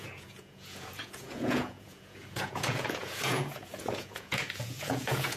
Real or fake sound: fake